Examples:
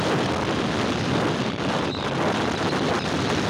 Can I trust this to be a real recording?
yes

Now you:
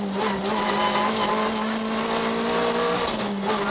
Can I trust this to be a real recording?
yes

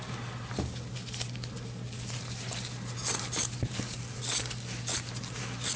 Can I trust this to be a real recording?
yes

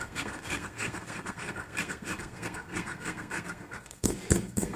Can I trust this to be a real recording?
no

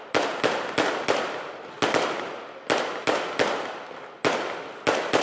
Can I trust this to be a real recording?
yes